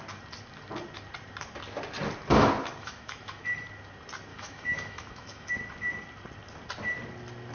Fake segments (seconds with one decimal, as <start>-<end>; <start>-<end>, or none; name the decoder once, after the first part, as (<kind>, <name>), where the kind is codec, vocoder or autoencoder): 2.8-3.4 (autoencoder, DAC-VAE); 4.3-5.5